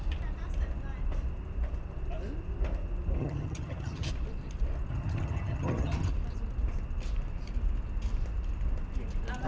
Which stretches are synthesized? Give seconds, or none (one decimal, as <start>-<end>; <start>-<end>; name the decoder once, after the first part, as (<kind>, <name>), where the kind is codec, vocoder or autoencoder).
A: 3.2-4.1 (vocoder, HiFi-GAN); 4.9-6.1